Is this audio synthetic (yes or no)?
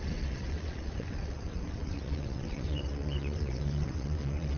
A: yes